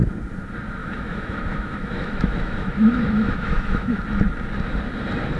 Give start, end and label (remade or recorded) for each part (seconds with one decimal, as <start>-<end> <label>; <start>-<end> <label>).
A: 0.0-0.8 recorded; 0.8-4.0 remade; 4.0-5.4 recorded